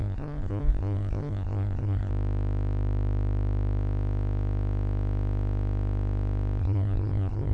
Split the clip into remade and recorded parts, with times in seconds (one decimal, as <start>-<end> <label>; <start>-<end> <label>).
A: 0.0-2.1 remade; 2.1-6.6 recorded; 6.6-7.5 remade